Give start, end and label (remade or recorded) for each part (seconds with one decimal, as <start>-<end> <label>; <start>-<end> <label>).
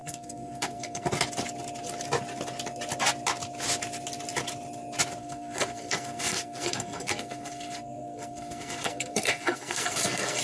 0.0-1.1 remade; 1.1-5.2 recorded; 5.2-10.4 remade